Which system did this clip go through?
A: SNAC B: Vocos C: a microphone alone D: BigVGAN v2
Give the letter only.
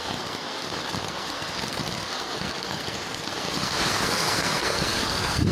A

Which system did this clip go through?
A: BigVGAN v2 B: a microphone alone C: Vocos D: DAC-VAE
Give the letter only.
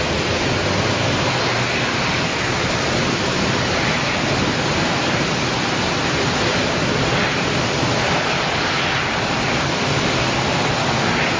B